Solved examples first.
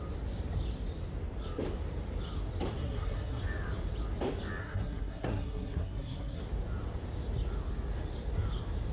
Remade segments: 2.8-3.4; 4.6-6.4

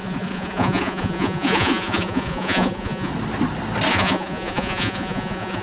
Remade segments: 0.0-3.1; 3.9-5.6

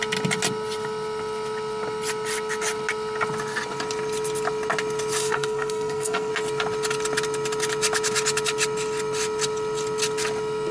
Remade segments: 5.2-6.3

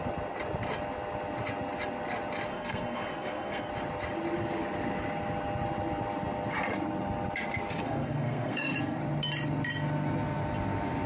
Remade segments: 2.5-3.7; 7.8-9.0

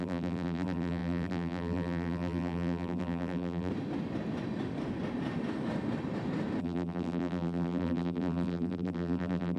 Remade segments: 0.0-3.7; 6.6-9.6

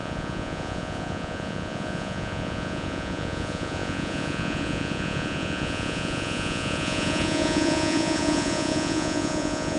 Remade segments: 0.0-9.8